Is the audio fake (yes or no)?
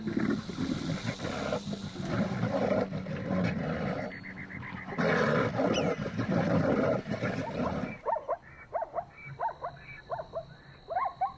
no